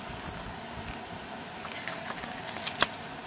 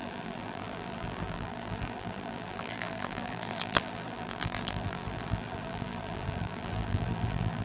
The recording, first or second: first